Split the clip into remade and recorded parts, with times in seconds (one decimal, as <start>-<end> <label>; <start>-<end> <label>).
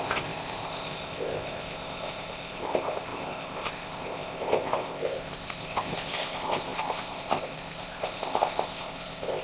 0.0-9.4 remade